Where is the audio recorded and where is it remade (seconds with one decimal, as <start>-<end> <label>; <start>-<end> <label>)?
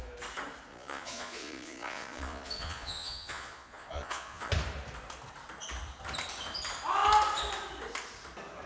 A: 0.0-0.7 recorded; 0.7-4.5 remade; 4.5-8.7 recorded